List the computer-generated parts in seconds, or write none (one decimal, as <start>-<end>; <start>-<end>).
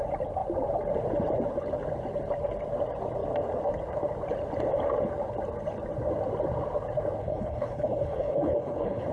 7.2-9.1